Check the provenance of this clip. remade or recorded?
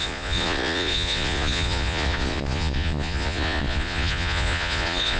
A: remade